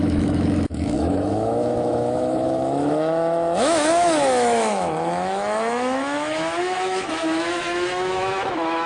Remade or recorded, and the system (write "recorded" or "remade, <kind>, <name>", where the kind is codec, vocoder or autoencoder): remade, autoencoder, DAC-VAE